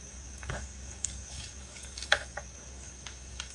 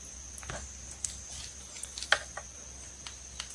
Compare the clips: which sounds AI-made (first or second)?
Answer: first